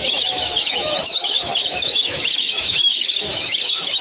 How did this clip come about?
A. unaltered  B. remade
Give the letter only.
B